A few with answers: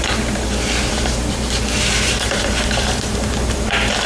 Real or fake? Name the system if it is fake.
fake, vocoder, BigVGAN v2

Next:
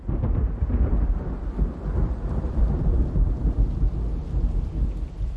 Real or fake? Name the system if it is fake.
fake, vocoder, BigVGAN v2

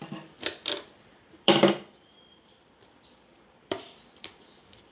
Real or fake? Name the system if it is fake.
fake, vocoder, BigVGAN v2